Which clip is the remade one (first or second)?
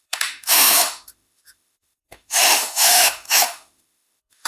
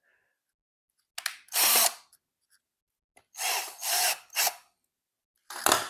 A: first